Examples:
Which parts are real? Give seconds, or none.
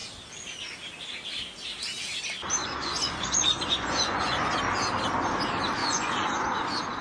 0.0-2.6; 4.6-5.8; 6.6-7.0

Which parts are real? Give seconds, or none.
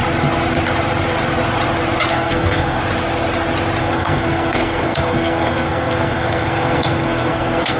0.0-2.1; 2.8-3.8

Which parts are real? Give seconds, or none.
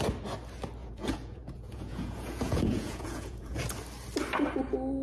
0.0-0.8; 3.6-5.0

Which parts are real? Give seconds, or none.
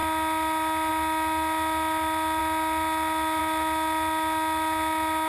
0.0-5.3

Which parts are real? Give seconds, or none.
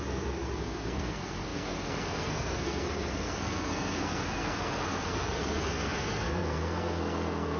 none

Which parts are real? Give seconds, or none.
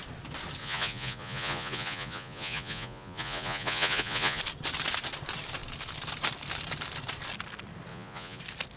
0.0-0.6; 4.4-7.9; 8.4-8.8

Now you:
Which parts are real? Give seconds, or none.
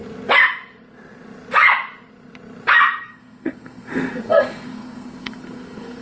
0.0-3.0